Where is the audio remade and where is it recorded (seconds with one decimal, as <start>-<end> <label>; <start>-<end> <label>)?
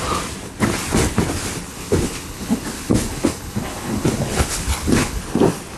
0.0-1.7 recorded; 1.7-5.2 remade; 5.2-5.8 recorded